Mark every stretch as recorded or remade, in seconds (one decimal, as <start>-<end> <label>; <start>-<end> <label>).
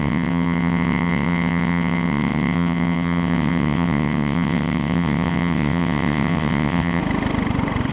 0.0-7.0 remade; 7.0-7.9 recorded